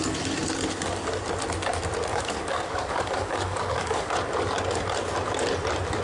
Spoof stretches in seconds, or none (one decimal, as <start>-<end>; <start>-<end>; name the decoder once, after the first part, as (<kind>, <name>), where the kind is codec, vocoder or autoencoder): 2.1-4.1 (codec, DAC)